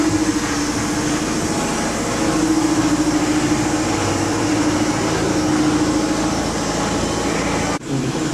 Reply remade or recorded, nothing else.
recorded